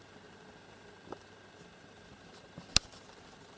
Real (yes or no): yes